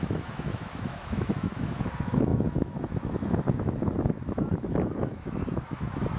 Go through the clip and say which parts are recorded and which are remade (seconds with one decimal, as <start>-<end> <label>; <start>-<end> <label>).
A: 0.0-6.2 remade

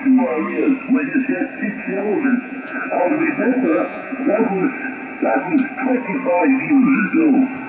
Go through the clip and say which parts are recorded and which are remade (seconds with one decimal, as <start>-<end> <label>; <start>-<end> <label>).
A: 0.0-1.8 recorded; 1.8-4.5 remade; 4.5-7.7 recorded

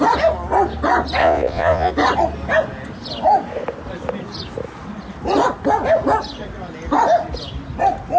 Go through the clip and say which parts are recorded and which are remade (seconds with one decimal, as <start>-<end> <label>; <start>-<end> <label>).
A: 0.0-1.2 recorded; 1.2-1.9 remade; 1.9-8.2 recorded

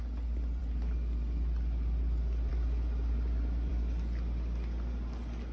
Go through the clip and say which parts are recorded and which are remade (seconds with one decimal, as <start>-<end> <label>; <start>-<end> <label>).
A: 0.0-5.5 recorded

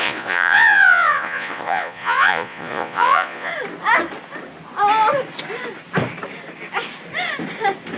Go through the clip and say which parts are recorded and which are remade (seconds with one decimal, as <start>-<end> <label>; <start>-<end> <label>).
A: 0.0-3.5 remade; 3.5-8.0 recorded

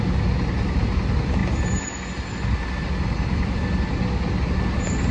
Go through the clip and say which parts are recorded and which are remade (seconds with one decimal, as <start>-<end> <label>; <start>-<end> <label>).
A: 0.0-5.1 recorded

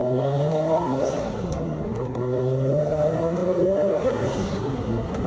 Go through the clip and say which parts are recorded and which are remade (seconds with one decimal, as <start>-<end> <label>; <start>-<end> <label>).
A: 0.0-5.3 remade